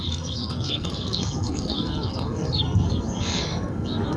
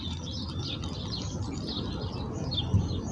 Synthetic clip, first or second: first